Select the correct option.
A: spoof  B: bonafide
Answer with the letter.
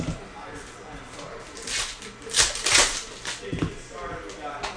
B